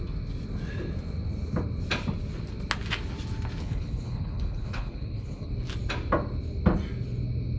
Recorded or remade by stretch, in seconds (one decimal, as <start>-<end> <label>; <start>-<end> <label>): 0.0-3.6 recorded; 3.6-5.5 remade; 5.5-7.6 recorded